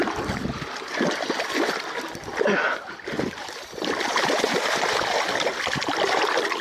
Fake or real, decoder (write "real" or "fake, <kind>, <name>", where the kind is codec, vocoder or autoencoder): real